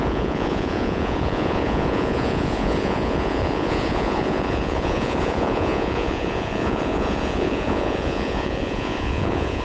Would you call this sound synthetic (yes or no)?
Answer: yes